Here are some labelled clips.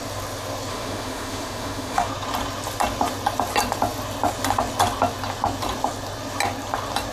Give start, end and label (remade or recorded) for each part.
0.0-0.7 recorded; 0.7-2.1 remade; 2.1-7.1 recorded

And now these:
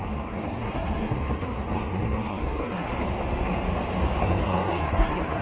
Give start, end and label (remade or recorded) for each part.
0.0-2.9 remade; 2.9-4.2 recorded; 4.2-5.4 remade

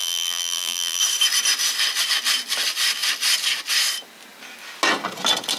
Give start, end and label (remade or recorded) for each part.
0.0-1.0 remade; 1.0-5.6 recorded